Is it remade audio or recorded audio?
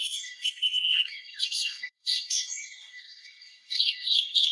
remade